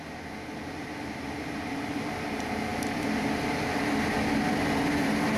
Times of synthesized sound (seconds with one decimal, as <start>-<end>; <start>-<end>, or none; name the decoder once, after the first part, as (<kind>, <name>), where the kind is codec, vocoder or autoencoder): none